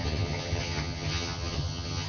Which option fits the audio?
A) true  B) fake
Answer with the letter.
B